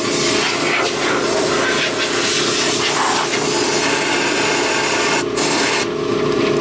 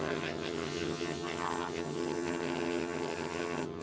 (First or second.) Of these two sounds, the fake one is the second